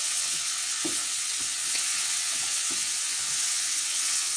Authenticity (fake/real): fake